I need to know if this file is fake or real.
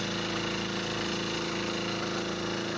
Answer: real